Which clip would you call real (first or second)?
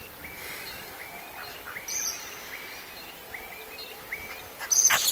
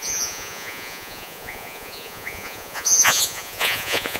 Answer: first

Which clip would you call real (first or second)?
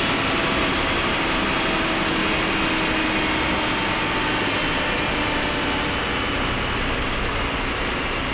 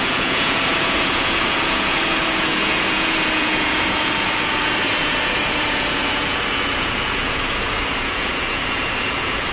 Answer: first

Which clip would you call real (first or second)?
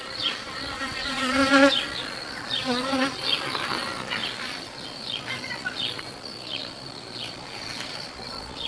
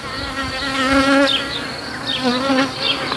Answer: second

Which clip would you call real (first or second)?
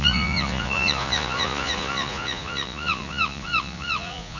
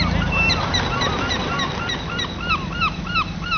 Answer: second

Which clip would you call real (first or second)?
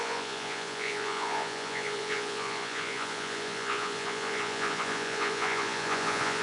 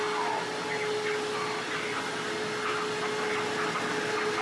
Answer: second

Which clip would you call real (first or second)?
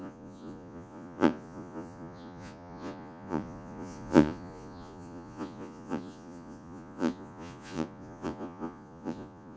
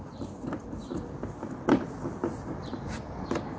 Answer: second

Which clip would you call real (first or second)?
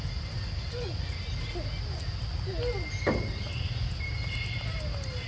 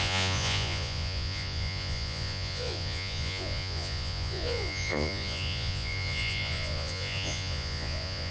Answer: first